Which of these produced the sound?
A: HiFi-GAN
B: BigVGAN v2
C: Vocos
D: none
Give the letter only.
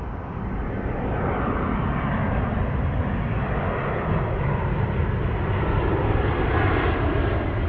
D